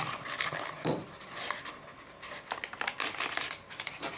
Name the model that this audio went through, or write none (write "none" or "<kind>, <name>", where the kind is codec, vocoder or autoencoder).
none